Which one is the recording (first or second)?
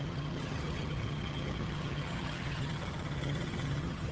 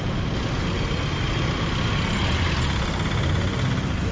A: second